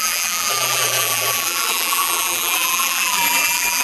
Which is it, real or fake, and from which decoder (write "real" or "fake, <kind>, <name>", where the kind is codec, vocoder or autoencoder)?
fake, vocoder, BigVGAN v2